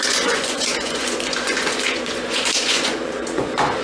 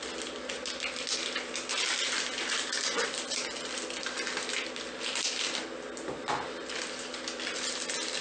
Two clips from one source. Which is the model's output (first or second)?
first